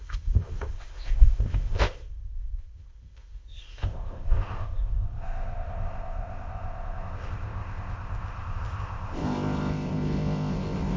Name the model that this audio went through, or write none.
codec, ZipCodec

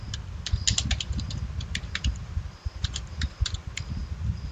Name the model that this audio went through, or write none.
none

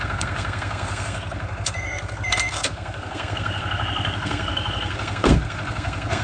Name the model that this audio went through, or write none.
codec, SNAC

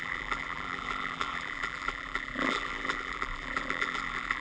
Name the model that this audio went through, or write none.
vocoder, BigVGAN v2